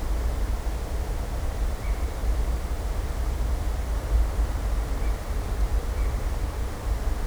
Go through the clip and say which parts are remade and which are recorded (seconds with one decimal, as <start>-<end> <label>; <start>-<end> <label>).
0.0-7.3 remade